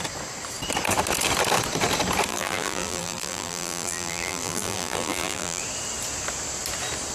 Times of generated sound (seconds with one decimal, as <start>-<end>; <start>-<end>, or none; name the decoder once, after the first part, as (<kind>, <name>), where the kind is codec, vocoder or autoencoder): 2.3-5.6 (vocoder, BigVGAN v2)